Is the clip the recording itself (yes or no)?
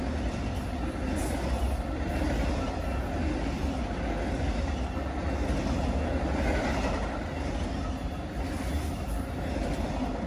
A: yes